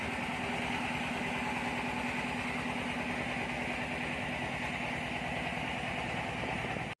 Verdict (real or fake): real